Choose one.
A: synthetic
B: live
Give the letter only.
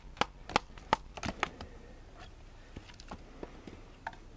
B